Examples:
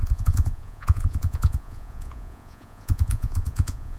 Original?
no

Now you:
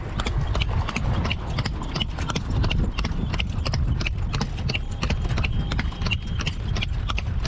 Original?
yes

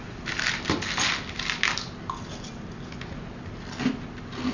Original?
yes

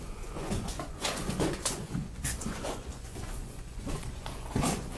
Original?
no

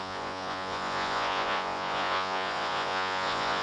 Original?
no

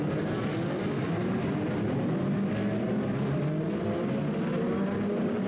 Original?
yes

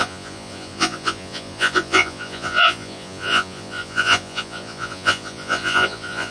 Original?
no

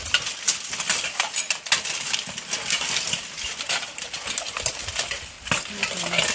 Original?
yes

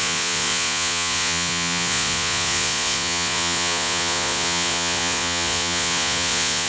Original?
no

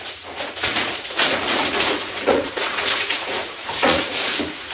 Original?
no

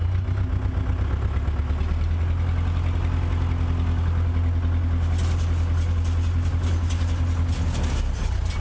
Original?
yes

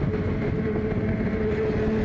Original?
yes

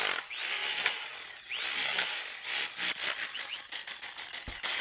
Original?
yes